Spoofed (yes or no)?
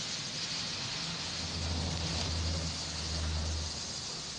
no